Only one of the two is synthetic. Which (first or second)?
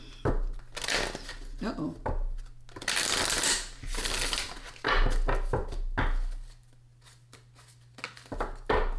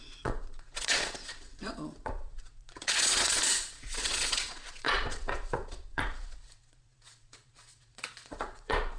second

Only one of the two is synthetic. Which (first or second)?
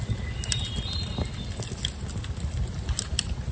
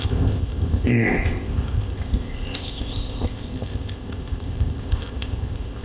second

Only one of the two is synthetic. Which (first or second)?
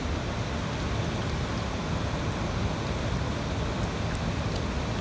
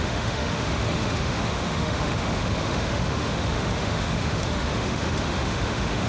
second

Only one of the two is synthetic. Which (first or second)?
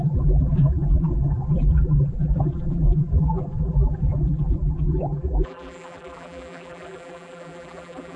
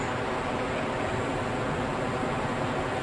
first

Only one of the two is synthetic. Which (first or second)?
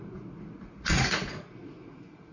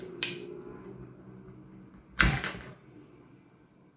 first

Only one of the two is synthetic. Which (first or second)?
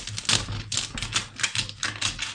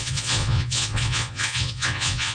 second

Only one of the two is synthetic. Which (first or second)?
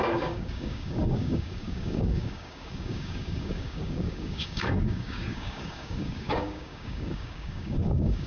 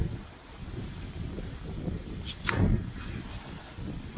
first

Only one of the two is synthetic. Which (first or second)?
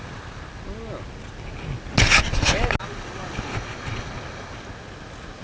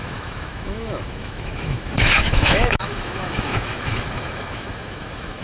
second